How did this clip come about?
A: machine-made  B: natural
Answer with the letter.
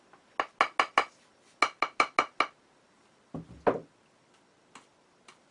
B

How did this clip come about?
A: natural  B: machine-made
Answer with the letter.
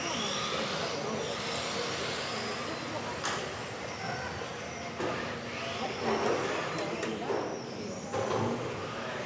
A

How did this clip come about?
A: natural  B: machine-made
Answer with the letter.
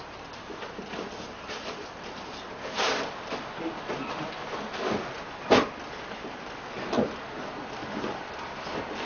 A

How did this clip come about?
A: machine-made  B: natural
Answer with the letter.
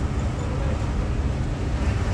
B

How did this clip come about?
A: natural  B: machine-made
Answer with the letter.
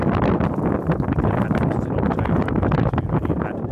A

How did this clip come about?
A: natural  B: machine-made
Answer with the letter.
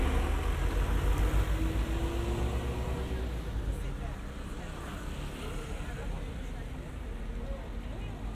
A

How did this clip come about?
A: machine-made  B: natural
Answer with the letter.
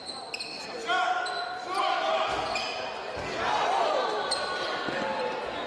B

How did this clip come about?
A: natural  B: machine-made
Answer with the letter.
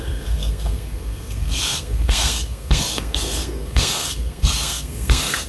B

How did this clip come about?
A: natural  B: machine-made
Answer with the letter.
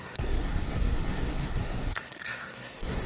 B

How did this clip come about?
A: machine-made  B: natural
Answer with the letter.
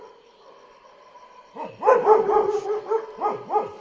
B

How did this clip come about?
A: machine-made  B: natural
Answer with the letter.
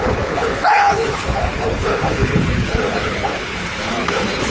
A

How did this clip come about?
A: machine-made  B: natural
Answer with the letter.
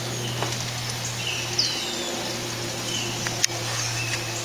B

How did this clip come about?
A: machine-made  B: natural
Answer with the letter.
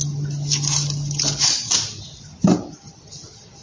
B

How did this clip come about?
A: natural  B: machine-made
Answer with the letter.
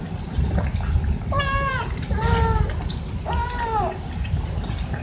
A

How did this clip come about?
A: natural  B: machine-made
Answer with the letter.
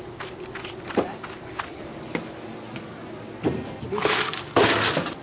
A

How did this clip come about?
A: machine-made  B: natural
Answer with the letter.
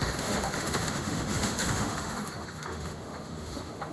A